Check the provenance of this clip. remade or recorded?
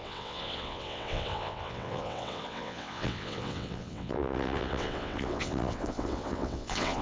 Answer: remade